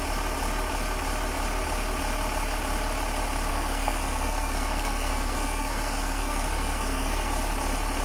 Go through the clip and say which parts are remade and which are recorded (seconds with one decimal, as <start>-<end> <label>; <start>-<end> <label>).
0.0-3.5 recorded; 3.5-7.3 remade; 7.3-8.0 recorded